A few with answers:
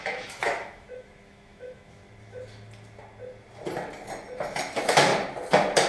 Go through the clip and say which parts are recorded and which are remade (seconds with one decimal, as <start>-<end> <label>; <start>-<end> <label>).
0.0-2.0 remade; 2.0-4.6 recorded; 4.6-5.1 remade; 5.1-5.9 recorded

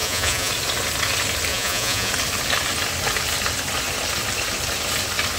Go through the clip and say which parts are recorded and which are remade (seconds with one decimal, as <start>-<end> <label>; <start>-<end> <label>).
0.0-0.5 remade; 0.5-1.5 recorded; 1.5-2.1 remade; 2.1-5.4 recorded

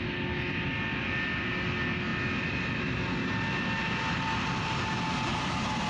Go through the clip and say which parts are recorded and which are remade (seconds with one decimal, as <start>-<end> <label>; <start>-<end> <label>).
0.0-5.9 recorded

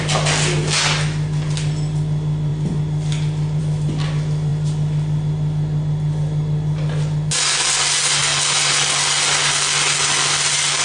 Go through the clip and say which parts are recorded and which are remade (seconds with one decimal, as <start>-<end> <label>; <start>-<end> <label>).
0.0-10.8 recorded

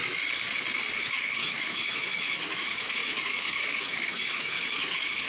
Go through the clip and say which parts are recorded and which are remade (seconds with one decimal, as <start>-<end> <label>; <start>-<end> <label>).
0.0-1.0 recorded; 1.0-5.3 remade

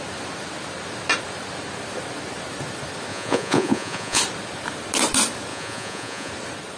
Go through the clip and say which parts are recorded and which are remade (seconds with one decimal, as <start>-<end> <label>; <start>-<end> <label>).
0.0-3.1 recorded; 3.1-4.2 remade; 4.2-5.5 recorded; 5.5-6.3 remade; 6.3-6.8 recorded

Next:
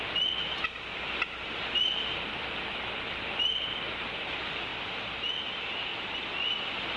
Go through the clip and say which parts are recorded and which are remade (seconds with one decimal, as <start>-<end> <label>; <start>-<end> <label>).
0.0-0.9 recorded; 0.9-4.2 remade; 4.2-4.7 recorded; 4.7-5.5 remade; 5.5-5.9 recorded; 5.9-7.0 remade